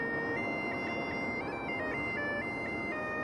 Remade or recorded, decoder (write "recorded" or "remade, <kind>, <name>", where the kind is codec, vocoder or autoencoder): recorded